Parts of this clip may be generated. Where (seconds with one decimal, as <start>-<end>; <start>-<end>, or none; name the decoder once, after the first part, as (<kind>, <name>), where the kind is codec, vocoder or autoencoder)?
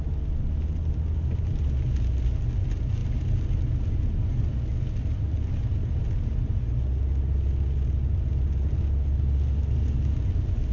none